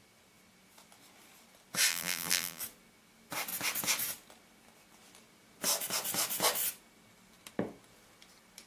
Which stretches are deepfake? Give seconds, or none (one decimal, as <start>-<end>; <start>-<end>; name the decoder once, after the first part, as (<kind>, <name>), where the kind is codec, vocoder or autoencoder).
1.9-2.6 (vocoder, BigVGAN v2)